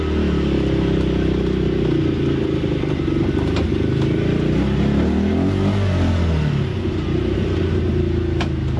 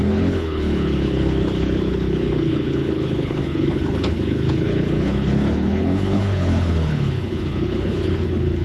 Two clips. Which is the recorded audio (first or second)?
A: first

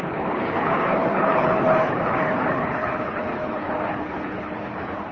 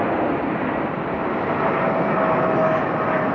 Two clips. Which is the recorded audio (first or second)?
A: second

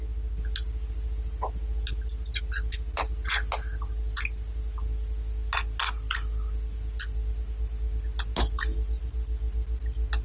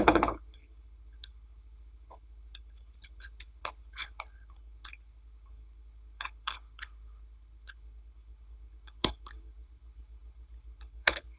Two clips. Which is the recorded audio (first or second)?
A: first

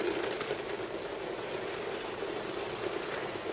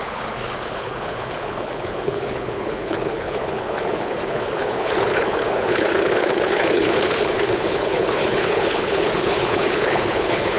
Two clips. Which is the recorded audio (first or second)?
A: first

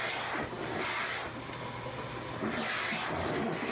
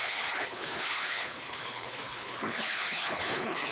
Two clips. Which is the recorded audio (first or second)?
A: first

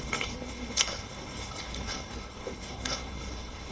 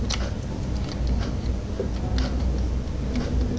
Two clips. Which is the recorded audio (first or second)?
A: second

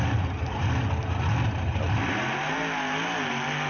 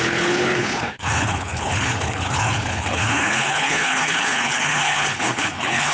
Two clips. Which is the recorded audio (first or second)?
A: first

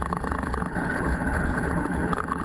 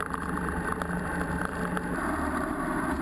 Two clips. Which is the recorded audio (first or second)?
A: second